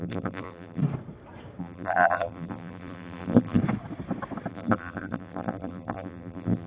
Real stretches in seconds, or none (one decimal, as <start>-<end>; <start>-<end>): 0.8-1.6; 3.6-4.5